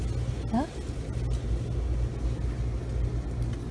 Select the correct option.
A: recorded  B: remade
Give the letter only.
A